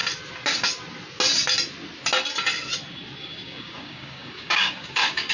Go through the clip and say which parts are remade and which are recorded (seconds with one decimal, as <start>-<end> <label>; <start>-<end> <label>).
0.0-3.2 recorded; 3.2-5.3 remade